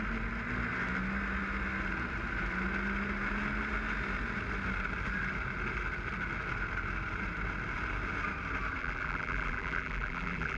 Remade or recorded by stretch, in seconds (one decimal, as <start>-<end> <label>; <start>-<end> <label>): 0.0-8.8 recorded; 8.8-10.6 remade